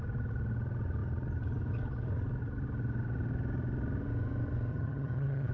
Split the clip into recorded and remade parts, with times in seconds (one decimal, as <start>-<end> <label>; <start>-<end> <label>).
0.0-4.7 recorded; 4.7-5.5 remade